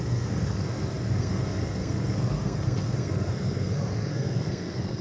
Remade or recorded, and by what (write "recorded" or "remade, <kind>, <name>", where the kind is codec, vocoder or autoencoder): remade, codec, SNAC